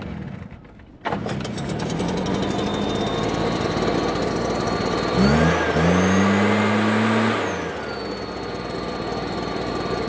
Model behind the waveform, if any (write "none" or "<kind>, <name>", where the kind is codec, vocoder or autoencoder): none